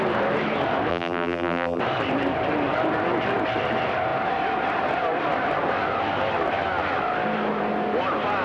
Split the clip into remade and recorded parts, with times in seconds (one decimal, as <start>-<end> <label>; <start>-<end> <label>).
0.0-0.9 recorded; 0.9-1.8 remade; 1.8-8.4 recorded

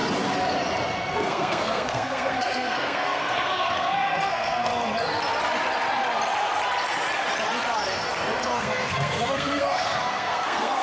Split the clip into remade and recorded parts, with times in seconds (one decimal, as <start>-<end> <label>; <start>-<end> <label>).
0.0-1.1 recorded; 1.1-4.7 remade; 4.7-8.4 recorded; 8.4-10.8 remade

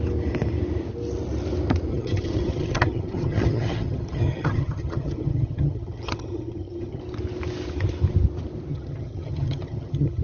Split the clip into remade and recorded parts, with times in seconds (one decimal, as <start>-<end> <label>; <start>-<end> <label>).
0.0-1.9 recorded; 1.9-7.0 remade; 7.0-8.7 recorded; 8.7-10.2 remade

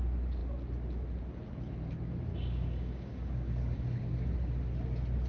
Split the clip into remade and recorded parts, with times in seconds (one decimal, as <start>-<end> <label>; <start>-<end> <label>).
0.0-2.3 recorded; 2.3-4.3 remade; 4.3-5.3 recorded

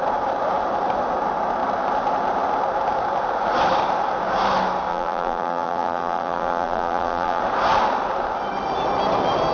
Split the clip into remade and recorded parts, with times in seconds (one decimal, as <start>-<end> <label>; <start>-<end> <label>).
0.0-4.9 recorded; 4.9-7.4 remade; 7.4-9.5 recorded